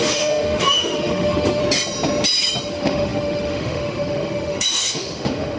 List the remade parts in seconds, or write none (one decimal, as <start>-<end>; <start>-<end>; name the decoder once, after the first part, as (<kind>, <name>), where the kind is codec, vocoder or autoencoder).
0.0-1.6 (autoencoder, DAC-VAE); 2.7-5.6